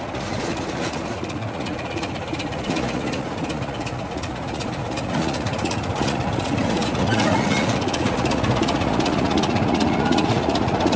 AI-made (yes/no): yes